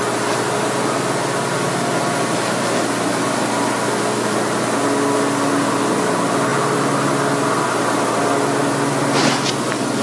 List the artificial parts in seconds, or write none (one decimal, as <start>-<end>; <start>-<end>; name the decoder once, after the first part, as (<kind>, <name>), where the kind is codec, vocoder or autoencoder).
none